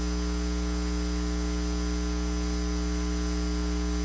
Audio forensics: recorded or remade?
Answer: recorded